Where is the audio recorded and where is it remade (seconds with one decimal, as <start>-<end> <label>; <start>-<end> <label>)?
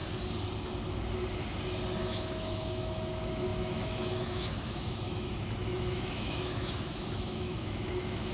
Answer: 0.0-2.0 recorded; 2.0-8.3 remade